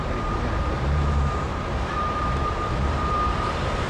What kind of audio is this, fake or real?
fake